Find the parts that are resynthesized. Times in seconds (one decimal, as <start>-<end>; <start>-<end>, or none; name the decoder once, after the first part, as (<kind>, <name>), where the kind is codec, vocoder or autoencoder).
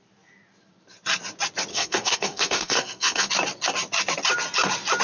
1.7-3.3 (codec, SNAC)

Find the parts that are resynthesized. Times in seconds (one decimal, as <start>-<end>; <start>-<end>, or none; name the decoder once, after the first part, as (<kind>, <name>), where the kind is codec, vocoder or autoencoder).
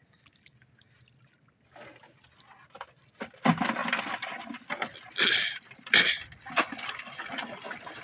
none